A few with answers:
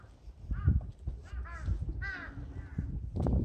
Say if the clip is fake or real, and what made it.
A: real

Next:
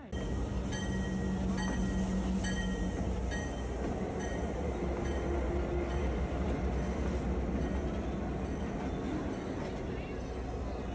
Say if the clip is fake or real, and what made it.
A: real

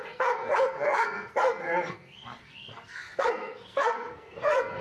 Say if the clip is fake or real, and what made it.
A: fake, codec, SNAC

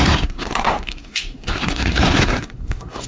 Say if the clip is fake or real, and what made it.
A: fake, codec, SNAC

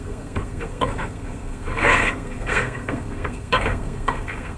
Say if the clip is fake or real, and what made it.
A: fake, codec, SNAC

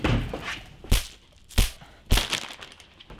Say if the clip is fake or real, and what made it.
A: real